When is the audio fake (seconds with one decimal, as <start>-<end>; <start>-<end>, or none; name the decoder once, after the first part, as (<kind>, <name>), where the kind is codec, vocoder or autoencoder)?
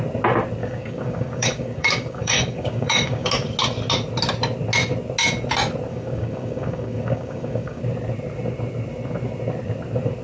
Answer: 0.6-3.3 (codec, DAC); 5.9-7.8